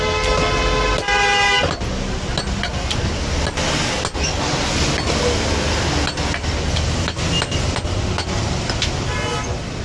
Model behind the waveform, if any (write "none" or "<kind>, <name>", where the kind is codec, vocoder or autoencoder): none